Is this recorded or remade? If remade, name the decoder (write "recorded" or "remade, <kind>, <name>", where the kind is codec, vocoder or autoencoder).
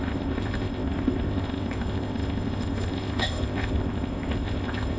remade, codec, ZipCodec